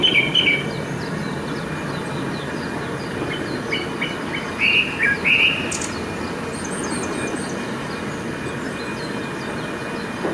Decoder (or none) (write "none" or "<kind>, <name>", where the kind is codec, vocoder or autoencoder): none